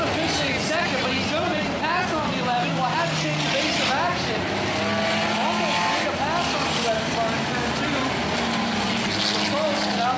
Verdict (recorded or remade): recorded